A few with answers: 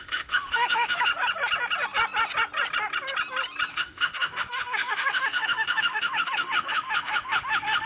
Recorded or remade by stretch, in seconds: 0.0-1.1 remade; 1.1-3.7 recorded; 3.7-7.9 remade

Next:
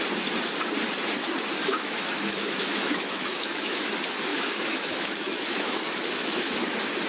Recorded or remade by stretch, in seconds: 0.0-1.7 recorded; 1.7-3.9 remade; 3.9-4.3 recorded; 4.3-6.6 remade; 6.6-7.1 recorded

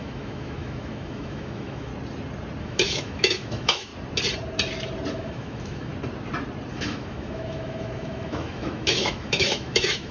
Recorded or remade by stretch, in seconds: 0.0-1.9 remade; 1.9-2.6 recorded; 2.6-3.9 remade; 3.9-5.1 recorded; 5.1-5.9 remade; 5.9-6.7 recorded; 6.7-10.1 remade

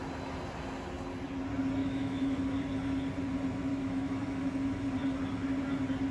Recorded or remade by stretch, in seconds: 0.0-1.8 recorded; 1.8-2.4 remade; 2.4-3.7 recorded; 3.7-4.5 remade; 4.5-6.1 recorded

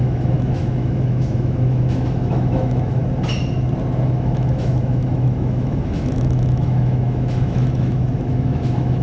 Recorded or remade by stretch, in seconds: 0.0-3.0 remade; 3.0-4.0 recorded; 4.0-9.0 remade